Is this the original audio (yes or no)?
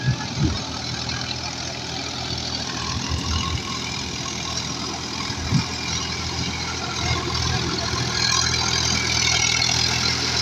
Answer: yes